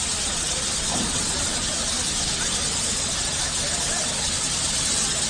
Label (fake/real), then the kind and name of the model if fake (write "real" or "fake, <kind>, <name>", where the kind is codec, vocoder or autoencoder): real